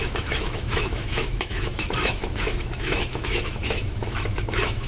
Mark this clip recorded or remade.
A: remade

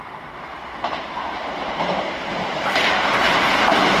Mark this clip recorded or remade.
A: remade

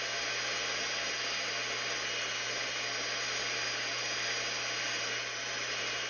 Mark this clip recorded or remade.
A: recorded